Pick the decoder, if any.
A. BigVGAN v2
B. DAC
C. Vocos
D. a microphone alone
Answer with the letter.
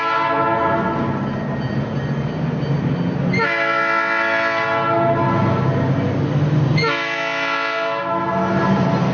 D